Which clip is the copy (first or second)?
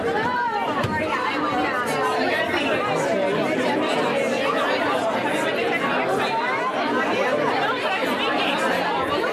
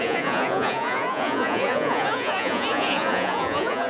second